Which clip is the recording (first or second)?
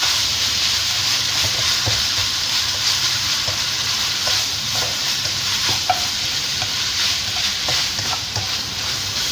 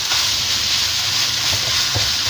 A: second